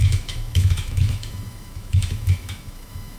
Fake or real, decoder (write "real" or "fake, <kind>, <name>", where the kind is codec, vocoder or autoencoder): fake, autoencoder, DAC-VAE